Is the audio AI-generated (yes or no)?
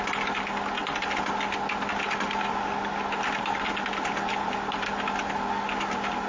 no